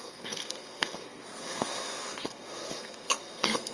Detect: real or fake fake